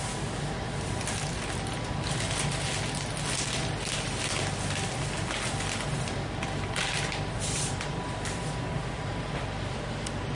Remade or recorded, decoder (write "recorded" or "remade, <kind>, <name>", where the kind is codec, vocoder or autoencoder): recorded